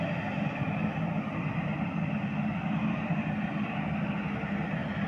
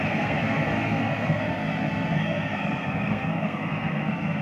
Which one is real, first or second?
first